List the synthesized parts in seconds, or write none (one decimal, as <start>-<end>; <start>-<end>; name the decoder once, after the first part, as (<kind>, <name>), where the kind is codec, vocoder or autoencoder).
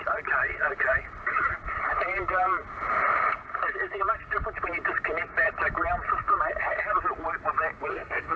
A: 7.9-8.4 (codec, SNAC)